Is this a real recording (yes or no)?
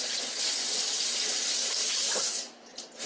yes